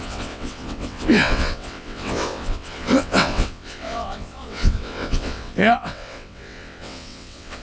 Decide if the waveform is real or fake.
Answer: fake